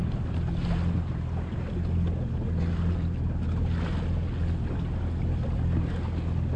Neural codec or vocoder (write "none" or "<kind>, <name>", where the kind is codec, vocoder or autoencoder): none